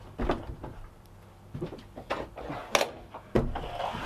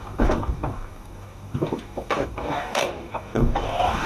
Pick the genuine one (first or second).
first